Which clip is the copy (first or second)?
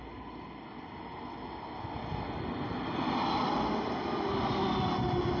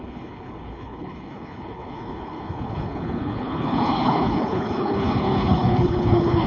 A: second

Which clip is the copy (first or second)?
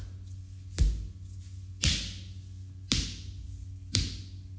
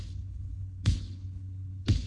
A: second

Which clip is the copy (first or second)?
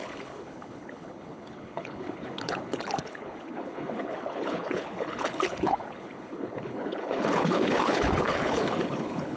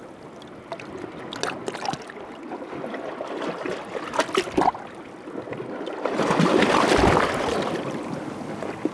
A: first